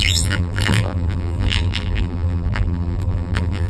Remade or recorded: remade